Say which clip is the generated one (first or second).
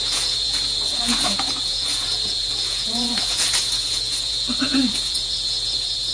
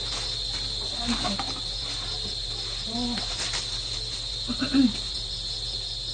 first